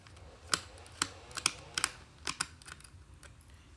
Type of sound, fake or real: real